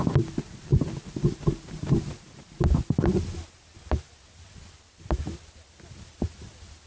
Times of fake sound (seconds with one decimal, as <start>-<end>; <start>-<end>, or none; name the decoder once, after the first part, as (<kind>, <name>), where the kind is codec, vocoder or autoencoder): none